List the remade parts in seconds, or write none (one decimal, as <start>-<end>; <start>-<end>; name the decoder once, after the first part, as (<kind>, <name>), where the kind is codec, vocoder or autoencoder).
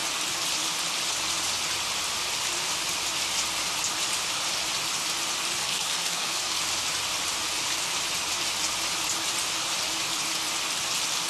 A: 5.6-6.6 (codec, SNAC)